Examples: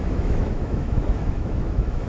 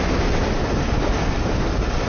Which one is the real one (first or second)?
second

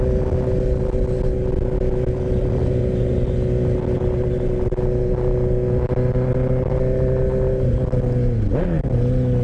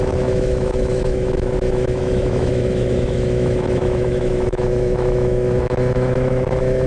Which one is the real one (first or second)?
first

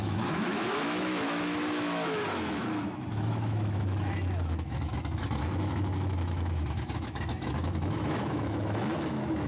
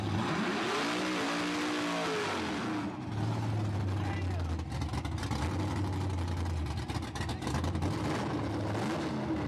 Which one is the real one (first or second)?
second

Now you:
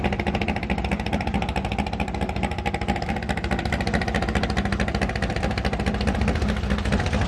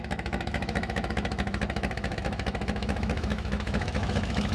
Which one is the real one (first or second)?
first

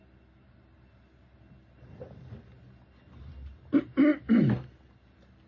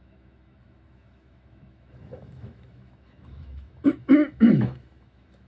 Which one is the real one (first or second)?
first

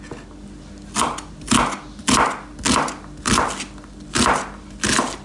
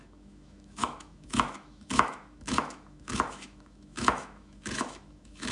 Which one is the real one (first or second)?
first